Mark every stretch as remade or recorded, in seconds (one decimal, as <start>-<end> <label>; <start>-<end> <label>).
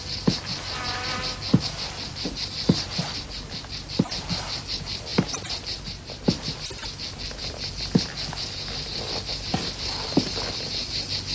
0.0-11.3 recorded